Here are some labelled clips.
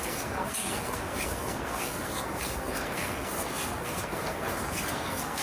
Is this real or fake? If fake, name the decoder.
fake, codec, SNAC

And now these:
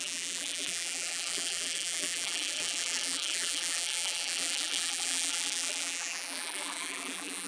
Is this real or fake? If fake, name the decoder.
fake, vocoder, BigVGAN v2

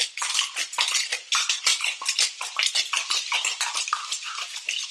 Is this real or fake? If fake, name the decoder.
real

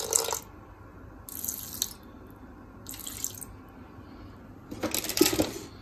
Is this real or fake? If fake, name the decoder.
real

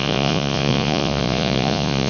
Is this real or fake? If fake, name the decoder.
fake, vocoder, Vocos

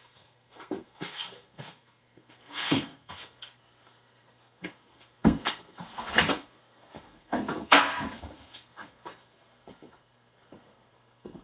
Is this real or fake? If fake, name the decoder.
fake, codec, SNAC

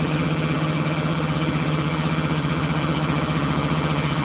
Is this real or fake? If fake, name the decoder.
fake, vocoder, HiFi-GAN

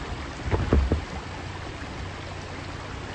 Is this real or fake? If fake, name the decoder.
real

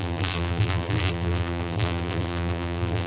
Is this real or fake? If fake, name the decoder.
fake, vocoder, BigVGAN v2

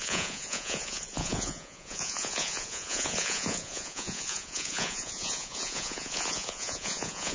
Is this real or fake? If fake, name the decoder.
fake, vocoder, Vocos